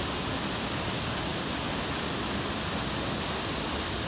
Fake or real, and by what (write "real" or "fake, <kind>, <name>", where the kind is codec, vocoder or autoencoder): real